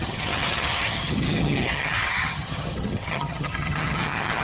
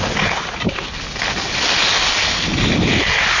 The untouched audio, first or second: second